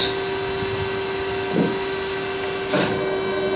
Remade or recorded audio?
recorded